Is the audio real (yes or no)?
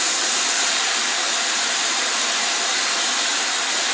no